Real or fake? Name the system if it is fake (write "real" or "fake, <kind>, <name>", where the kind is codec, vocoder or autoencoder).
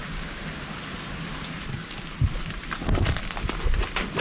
real